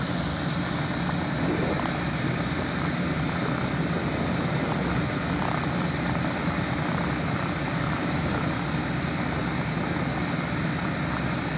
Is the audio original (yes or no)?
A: yes